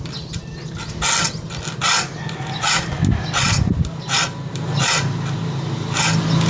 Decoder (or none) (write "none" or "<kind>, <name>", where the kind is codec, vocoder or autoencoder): none